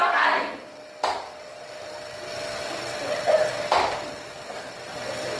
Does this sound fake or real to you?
real